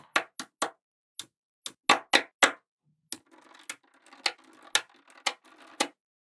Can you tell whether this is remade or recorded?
recorded